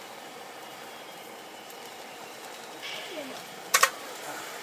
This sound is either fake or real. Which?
fake